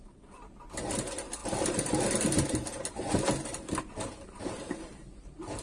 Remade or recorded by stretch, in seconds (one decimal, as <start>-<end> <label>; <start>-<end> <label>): 0.0-5.6 recorded